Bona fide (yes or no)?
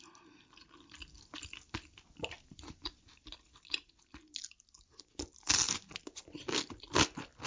yes